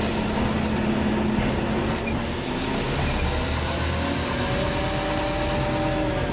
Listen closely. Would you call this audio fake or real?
real